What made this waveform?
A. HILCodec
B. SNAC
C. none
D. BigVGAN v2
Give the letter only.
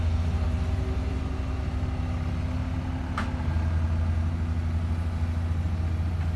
C